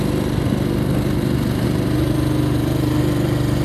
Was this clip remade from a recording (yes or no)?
yes